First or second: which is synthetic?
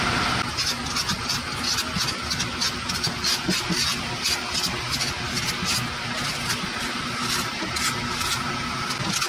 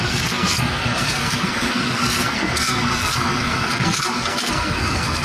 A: second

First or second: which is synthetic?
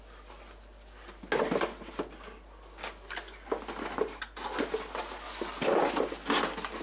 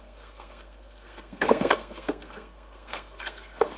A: second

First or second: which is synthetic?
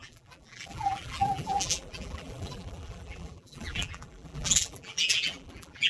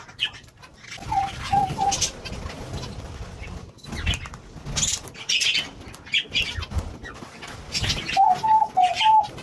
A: first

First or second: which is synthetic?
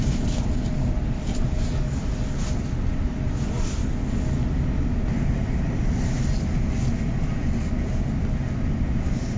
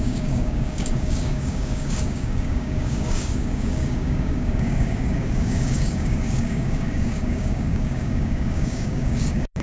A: second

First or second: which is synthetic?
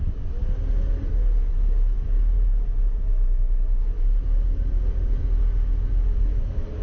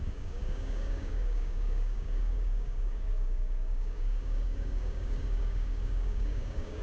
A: second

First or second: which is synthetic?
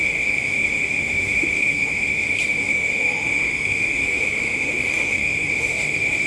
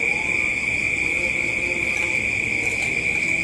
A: first